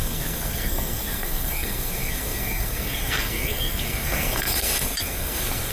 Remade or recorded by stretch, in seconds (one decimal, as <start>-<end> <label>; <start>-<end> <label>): 0.0-5.7 remade